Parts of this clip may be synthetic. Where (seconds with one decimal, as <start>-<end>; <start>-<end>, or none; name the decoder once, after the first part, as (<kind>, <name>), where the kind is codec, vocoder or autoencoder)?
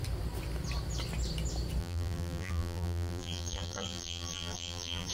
1.8-5.1 (vocoder, BigVGAN v2)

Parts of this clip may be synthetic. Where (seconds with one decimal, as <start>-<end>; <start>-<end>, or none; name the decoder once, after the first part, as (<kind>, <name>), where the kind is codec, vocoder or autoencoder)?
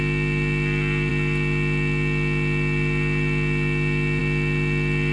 none